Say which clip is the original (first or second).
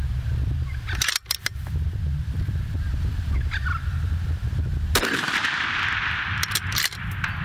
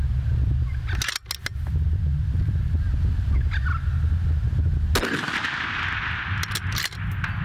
second